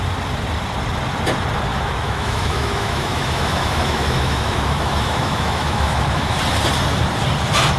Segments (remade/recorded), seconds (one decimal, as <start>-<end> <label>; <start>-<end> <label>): 0.0-1.7 recorded; 1.7-6.4 remade; 6.4-7.8 recorded